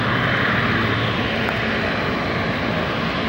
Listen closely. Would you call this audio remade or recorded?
recorded